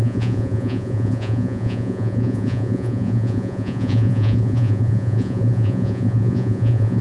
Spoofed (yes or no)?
yes